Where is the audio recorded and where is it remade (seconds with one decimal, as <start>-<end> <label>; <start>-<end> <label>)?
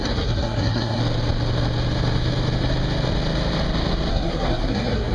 0.0-1.0 remade; 1.0-4.1 recorded; 4.1-5.1 remade